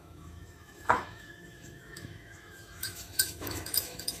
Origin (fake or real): fake